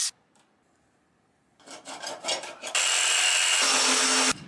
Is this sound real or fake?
real